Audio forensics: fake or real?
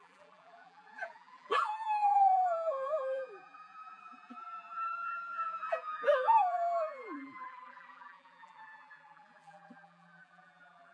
fake